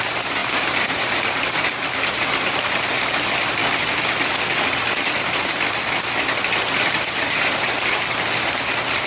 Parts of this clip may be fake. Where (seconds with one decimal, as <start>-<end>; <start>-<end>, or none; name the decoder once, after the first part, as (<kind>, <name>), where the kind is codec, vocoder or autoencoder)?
0.0-3.6 (vocoder, BigVGAN v2); 7.0-9.1